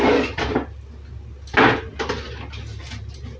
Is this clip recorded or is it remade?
recorded